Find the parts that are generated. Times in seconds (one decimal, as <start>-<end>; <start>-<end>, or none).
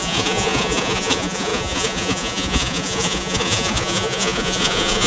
0.0-5.1